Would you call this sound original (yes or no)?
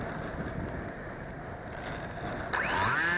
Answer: yes